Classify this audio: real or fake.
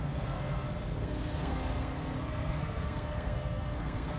fake